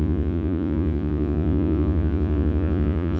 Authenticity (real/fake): fake